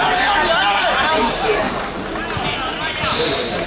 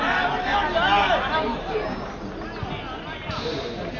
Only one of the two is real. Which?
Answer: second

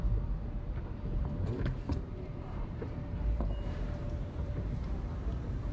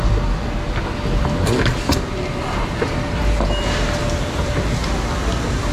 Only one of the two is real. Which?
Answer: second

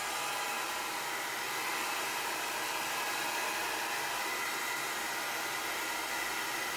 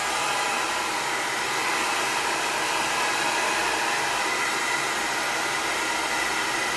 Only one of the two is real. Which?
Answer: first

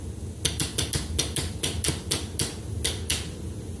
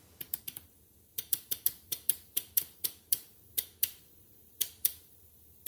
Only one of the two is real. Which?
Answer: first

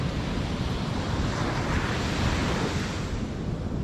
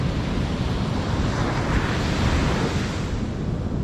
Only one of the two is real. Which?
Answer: second